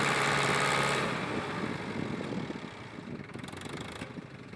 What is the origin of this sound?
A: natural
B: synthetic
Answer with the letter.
A